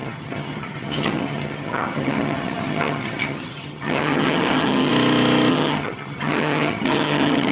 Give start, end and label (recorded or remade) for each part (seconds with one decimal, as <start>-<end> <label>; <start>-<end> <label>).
0.0-4.9 remade; 4.9-5.5 recorded; 5.5-7.5 remade